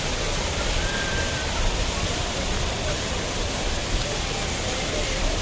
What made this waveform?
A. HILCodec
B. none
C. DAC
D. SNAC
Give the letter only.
B